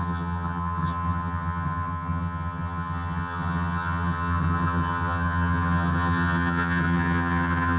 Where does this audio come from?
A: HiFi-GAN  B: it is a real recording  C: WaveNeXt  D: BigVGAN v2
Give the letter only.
A